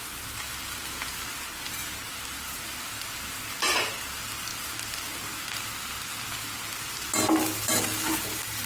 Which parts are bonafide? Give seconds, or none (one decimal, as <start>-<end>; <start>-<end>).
0.0-8.7